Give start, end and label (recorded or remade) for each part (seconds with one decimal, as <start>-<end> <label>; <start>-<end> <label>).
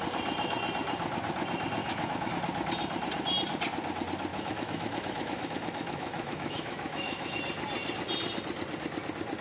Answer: 0.0-1.8 recorded; 1.8-2.3 remade; 2.3-4.3 recorded; 4.3-7.4 remade; 7.4-9.4 recorded